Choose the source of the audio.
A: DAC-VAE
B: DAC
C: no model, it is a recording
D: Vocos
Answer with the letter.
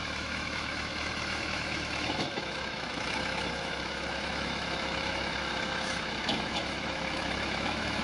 A